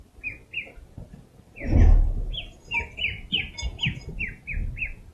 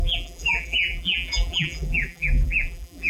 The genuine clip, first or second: first